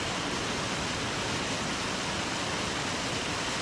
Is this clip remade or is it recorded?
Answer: recorded